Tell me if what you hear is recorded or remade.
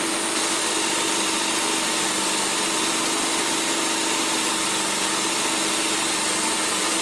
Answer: recorded